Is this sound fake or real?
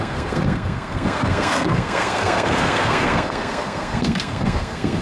fake